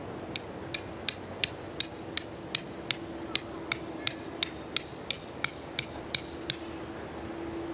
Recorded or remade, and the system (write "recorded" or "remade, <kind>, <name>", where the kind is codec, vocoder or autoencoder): recorded